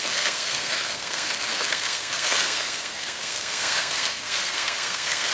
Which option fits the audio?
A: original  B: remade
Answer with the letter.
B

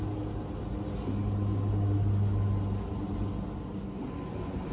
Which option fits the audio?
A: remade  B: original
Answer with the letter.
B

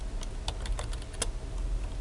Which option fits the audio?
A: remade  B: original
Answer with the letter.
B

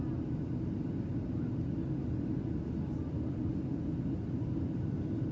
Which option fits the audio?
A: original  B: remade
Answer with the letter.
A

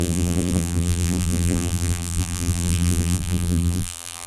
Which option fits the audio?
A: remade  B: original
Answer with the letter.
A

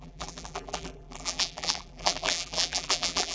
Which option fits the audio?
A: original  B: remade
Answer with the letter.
B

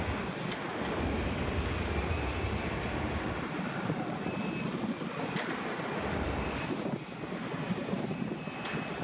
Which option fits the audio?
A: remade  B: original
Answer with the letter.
B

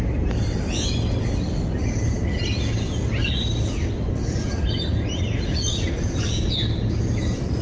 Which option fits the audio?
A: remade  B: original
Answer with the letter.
B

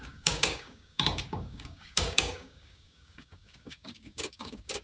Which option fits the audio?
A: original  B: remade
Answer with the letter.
B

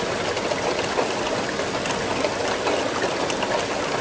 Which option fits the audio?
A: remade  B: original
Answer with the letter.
B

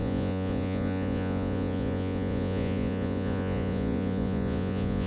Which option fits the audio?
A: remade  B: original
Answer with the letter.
A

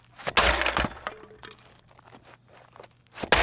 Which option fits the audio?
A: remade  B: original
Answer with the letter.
B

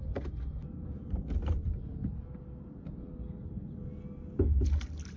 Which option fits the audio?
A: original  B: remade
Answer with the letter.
A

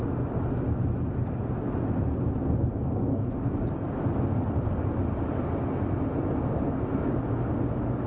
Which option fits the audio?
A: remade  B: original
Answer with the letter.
B